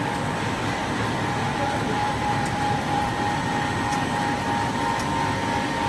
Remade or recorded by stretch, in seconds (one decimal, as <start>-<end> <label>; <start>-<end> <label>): 0.0-1.4 recorded; 1.4-3.1 remade; 3.1-5.9 recorded